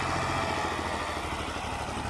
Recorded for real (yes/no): yes